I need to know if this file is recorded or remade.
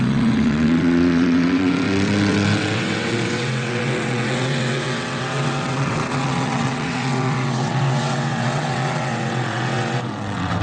remade